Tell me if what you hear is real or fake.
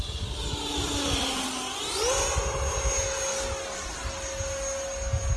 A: real